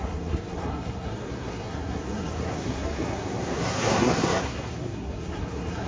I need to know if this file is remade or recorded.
remade